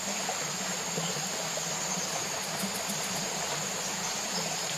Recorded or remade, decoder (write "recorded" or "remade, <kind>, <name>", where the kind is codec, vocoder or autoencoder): recorded